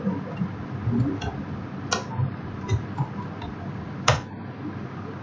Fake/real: real